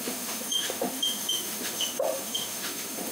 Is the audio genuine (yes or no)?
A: no